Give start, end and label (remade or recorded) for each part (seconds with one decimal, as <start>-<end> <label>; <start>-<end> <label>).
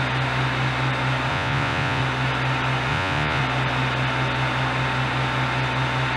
0.0-1.3 recorded; 1.3-2.0 remade; 2.0-2.9 recorded; 2.9-3.4 remade; 3.4-6.2 recorded